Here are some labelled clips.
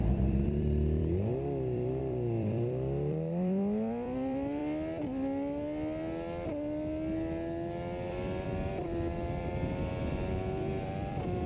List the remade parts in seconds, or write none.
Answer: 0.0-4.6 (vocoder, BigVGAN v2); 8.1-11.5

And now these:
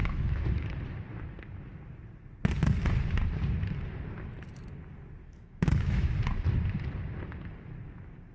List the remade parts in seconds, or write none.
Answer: 0.0-0.7 (autoencoder, DAC-VAE); 5.2-6.1

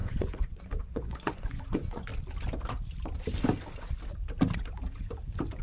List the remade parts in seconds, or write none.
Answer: 0.0-2.1 (vocoder, Vocos)

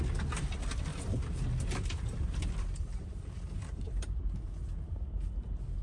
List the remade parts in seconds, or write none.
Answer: 0.9-4.2 (vocoder, BigVGAN v2)

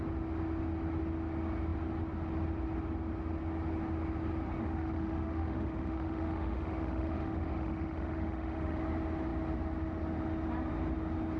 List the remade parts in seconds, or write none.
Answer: 4.6-8.8 (autoencoder, DAC-VAE)

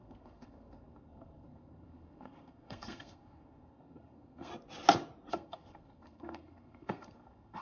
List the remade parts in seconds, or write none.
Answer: 0.0-4.5 (codec, SNAC); 5.3-7.6